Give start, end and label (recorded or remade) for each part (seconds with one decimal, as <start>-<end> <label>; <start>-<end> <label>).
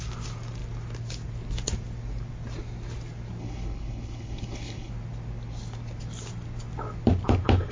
0.0-3.4 recorded; 3.4-4.9 remade; 4.9-7.7 recorded